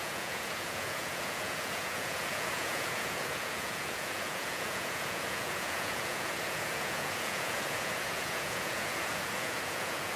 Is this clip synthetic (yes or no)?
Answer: yes